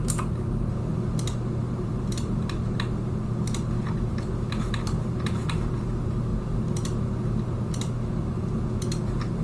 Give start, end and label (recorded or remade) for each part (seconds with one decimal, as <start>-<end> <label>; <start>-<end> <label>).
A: 0.0-9.4 recorded